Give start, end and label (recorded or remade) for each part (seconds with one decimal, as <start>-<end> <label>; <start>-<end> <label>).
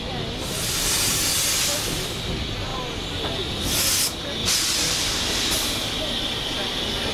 0.0-4.4 recorded; 4.4-5.1 remade; 5.1-7.1 recorded